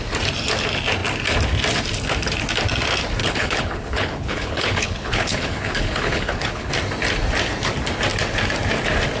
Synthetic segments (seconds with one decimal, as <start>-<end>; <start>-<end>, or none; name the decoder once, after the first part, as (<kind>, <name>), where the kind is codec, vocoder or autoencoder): 3.2-6.7 (codec, HILCodec)